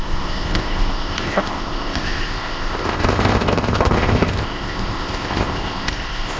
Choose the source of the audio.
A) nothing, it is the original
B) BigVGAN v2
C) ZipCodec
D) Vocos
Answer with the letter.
C